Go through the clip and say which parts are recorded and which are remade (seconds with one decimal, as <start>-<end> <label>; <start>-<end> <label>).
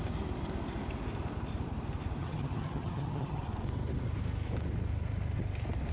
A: 0.0-2.2 recorded; 2.2-3.4 remade; 3.4-5.9 recorded